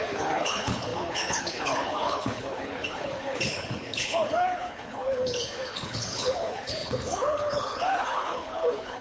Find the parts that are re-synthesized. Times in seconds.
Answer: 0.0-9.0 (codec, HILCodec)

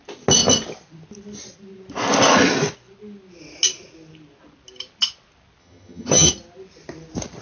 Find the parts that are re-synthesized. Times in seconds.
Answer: 5.6-6.3 (vocoder, HiFi-GAN)

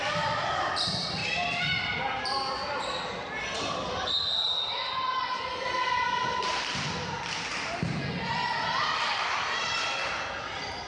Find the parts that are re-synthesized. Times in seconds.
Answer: 0.0-1.2 (vocoder, BigVGAN v2); 1.8-7.5; 8.3-10.9

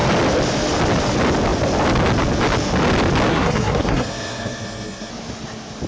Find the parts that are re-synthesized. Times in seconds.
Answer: 3.3-5.1 (codec, SNAC)

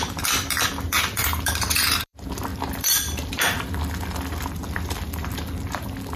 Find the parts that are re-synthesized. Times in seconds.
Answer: 0.0-6.2 (vocoder, BigVGAN v2)